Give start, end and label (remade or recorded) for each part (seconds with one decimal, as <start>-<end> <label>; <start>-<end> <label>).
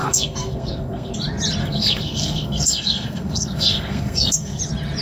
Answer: 0.0-1.1 remade; 1.1-1.6 recorded; 1.6-4.6 remade; 4.6-5.0 recorded